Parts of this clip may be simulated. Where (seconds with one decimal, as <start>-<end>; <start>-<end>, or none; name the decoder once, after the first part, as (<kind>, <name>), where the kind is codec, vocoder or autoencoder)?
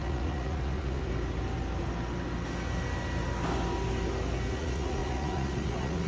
0.0-1.0 (vocoder, Vocos); 4.5-6.1